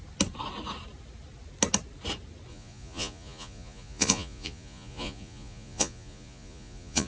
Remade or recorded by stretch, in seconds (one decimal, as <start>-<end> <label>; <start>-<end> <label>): 0.0-2.5 recorded; 2.5-7.1 remade